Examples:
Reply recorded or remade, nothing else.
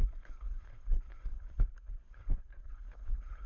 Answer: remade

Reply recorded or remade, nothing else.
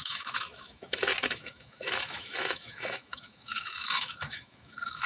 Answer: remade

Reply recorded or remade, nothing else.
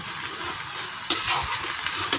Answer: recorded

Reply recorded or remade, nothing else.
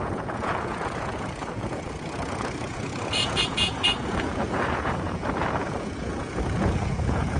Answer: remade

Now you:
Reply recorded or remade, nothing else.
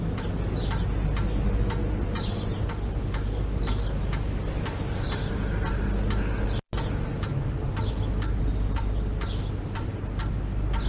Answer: recorded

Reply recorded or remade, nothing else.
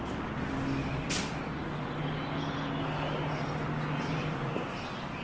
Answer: recorded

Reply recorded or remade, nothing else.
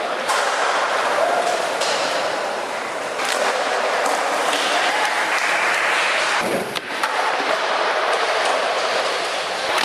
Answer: remade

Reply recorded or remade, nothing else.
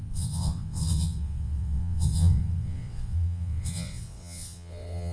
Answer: remade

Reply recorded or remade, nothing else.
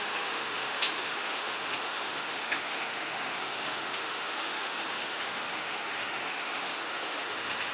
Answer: remade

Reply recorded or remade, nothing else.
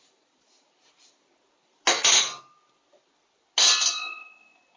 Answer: recorded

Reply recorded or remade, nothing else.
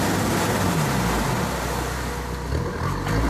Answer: recorded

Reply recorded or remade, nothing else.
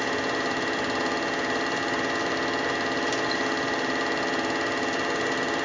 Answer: recorded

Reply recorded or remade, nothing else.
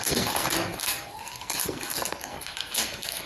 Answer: remade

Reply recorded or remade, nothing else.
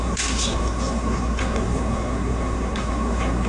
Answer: remade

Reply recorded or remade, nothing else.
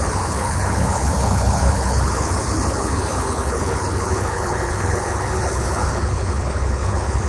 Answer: remade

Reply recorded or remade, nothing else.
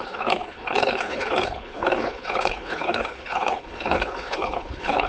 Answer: remade